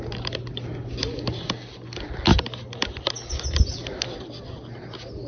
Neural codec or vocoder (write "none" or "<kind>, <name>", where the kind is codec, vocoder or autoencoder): none